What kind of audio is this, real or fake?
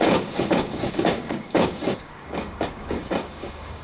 fake